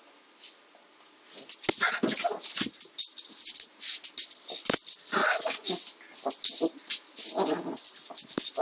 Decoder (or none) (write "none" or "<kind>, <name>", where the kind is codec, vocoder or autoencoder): none